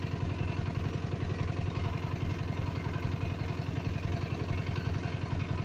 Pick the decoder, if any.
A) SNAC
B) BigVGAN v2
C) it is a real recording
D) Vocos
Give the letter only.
C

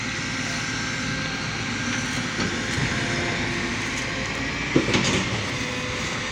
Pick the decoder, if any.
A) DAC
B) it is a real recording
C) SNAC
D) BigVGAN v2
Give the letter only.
B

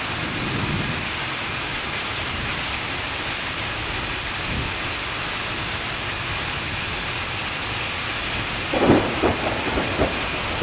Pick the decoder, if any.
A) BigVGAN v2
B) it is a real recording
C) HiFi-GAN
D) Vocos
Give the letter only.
B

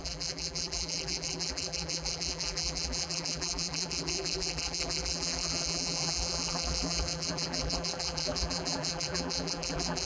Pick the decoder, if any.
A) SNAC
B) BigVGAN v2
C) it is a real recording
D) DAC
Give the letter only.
B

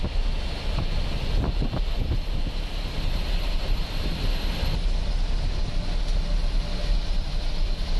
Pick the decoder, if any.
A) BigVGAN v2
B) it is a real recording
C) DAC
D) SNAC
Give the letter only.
B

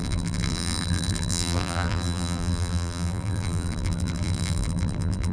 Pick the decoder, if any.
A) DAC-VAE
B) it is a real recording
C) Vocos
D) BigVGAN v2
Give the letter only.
D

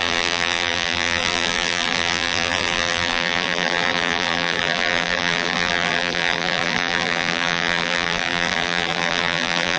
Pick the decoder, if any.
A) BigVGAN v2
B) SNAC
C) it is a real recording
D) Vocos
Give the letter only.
A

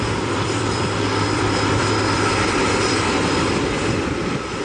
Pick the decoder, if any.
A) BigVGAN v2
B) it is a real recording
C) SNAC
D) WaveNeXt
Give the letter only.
A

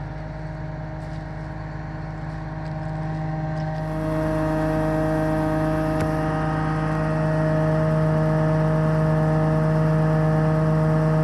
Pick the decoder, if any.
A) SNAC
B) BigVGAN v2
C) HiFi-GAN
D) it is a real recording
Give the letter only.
D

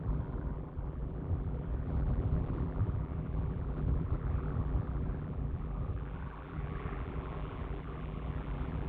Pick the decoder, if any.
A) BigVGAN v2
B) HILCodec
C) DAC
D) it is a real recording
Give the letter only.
A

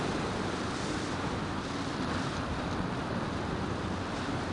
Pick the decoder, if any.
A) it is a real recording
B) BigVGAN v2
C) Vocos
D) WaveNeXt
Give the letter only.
B